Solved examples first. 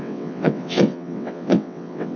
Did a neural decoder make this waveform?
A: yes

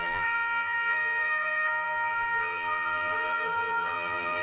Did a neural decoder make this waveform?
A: yes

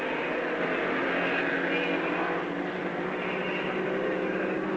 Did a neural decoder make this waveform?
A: no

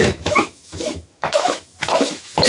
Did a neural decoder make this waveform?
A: yes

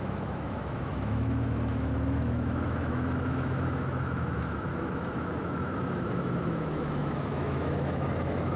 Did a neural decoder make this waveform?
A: yes